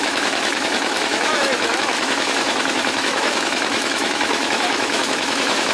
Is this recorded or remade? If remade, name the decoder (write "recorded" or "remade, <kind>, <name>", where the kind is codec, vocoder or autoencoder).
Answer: remade, autoencoder, DAC-VAE